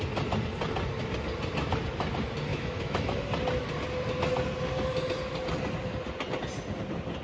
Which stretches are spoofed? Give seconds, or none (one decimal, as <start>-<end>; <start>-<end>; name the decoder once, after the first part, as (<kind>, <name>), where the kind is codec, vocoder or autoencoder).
2.5-3.2 (autoencoder, DAC-VAE)